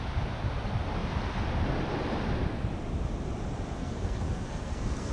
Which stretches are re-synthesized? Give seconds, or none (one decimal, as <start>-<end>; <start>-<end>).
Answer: 3.8-5.1